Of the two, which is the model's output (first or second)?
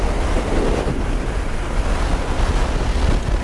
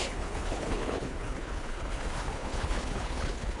second